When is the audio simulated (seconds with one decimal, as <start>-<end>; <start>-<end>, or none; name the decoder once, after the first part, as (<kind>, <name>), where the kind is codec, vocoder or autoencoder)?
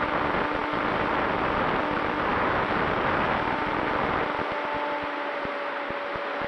none